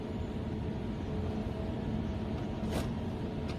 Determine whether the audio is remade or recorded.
recorded